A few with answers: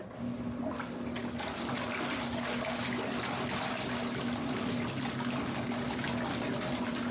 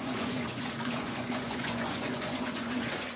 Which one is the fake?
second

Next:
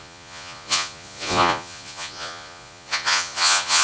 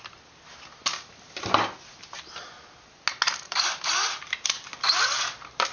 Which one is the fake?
first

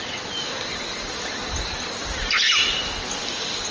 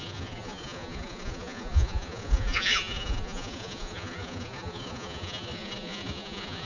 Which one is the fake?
second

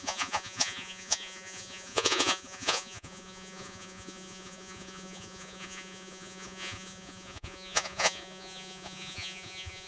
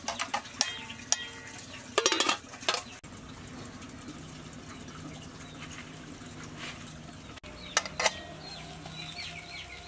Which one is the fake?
first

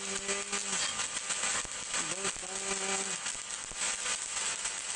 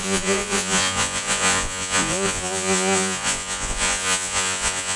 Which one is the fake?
second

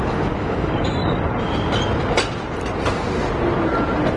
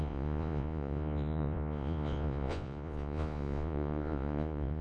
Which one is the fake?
second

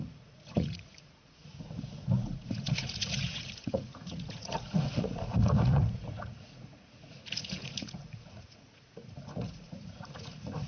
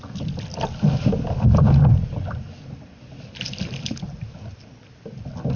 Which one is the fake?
first